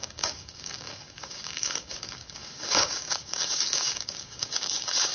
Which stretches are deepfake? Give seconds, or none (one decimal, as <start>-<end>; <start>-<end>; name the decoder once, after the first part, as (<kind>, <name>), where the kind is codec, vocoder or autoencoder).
0.0-5.1 (codec, DAC)